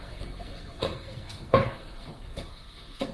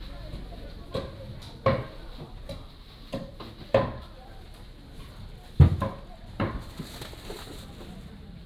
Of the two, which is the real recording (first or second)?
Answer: second